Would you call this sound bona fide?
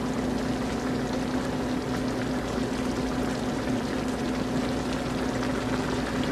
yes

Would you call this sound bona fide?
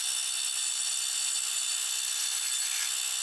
yes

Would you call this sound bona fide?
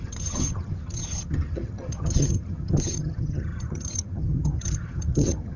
no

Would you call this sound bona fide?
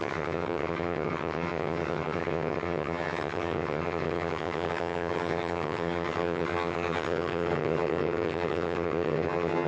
no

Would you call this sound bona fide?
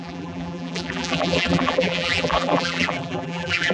no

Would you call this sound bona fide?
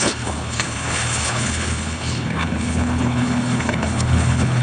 no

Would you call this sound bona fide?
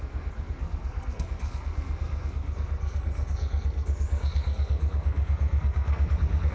no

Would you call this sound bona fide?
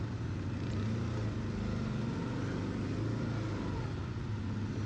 yes